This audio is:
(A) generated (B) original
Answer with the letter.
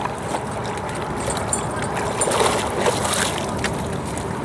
B